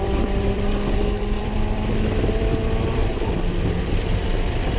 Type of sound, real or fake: fake